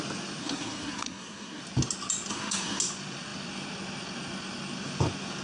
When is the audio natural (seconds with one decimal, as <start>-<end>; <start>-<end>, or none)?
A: 0.0-0.4; 1.6-2.3; 2.8-5.4